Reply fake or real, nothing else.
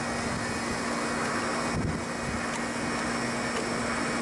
real